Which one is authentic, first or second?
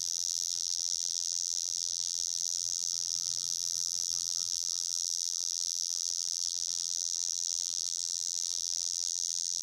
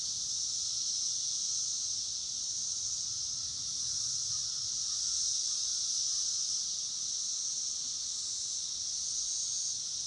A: second